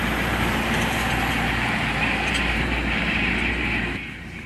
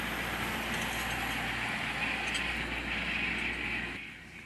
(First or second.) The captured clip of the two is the second